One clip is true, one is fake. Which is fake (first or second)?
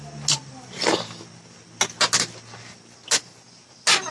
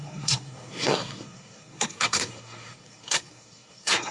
second